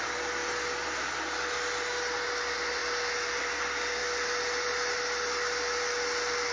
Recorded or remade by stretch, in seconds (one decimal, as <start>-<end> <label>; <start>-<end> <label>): 0.0-6.5 recorded